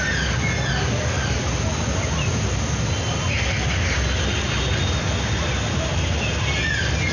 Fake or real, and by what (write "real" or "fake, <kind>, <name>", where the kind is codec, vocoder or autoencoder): real